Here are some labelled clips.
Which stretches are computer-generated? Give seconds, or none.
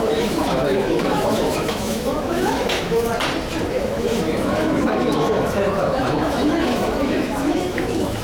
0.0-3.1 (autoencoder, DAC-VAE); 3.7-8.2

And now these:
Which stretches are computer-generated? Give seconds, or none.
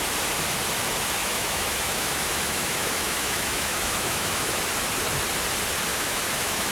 1.2-4.6 (autoencoder, DAC-VAE); 5.9-6.7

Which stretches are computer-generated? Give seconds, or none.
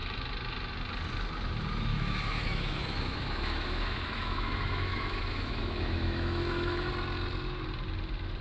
1.9-6.9 (autoencoder, DAC-VAE)